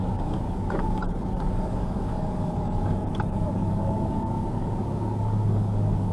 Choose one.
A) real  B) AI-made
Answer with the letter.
B